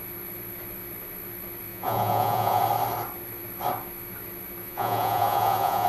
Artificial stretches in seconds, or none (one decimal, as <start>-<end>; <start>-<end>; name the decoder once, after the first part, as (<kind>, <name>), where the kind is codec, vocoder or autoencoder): 1.7-2.6 (vocoder, Vocos); 4.6-5.9